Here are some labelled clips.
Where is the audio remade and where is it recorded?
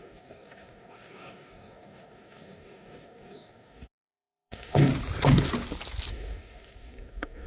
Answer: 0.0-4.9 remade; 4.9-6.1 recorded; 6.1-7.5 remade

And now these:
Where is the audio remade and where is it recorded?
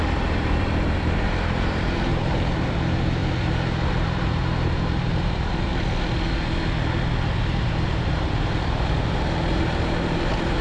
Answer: 0.0-5.7 remade; 5.7-7.4 recorded; 7.4-10.6 remade